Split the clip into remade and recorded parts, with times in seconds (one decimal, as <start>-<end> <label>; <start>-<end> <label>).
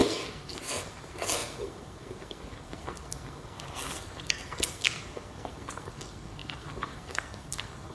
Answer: 0.0-7.9 remade